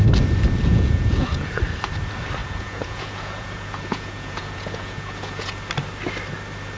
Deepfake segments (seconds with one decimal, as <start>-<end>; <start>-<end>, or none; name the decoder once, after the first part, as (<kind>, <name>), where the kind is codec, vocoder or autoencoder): 0.7-1.6 (vocoder, Vocos); 2.4-5.6